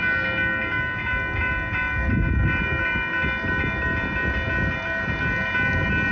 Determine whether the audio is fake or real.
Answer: real